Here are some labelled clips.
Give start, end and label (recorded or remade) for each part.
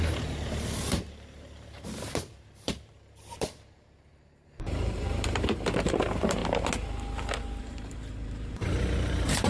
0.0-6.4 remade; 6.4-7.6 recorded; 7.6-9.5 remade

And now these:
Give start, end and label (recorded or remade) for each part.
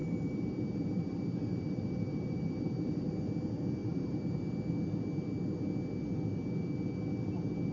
0.0-3.2 remade; 3.2-3.8 recorded; 3.8-4.4 remade; 4.4-7.7 recorded